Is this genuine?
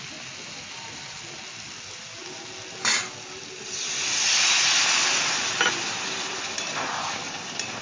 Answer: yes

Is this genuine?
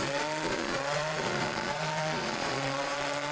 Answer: no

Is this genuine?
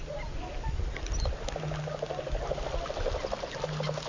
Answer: yes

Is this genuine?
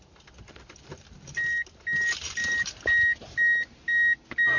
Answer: yes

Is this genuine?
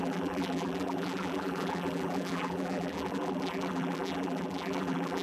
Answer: no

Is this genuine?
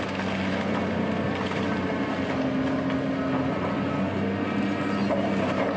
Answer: yes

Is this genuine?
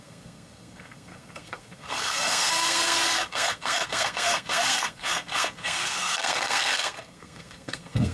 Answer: no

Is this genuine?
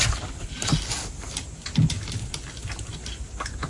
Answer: yes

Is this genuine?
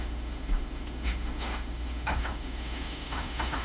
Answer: no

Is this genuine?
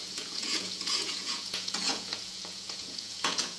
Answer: no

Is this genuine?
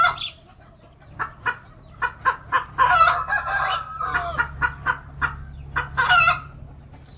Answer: yes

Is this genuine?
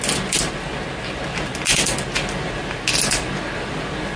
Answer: yes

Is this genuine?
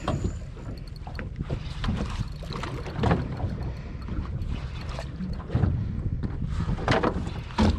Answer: yes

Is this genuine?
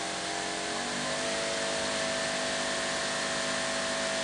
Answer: yes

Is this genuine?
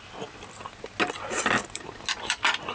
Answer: yes